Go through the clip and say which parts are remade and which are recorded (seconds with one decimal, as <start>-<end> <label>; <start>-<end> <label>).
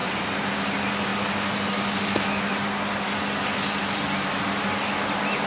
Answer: 0.0-0.5 remade; 0.5-5.5 recorded